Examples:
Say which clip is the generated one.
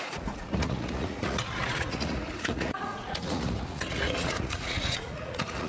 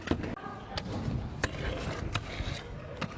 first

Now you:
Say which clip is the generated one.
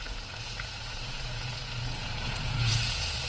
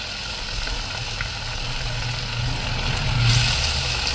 first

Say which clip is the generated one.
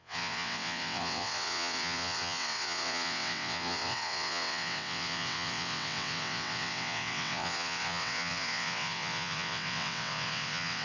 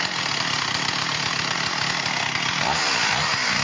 first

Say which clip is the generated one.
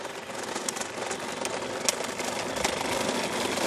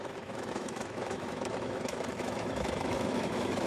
second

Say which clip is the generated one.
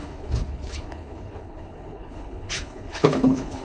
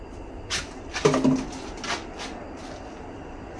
first